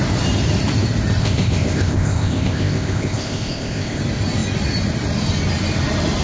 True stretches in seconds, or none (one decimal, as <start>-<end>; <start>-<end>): 0.0-1.2; 4.0-6.2